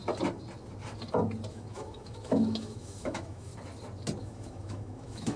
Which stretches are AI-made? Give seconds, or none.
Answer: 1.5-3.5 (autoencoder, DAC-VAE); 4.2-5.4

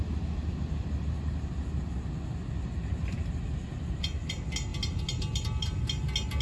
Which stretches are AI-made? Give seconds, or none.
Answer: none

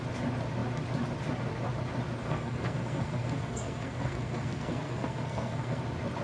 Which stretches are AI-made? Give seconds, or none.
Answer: 2.2-5.8 (codec, SNAC)

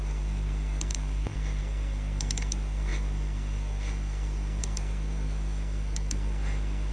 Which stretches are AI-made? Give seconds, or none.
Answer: 0.0-6.9 (codec, SNAC)

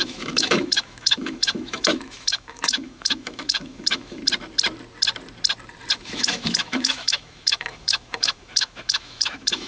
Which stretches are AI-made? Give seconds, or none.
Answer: 0.0-4.2 (autoencoder, DAC-VAE); 5.9-9.7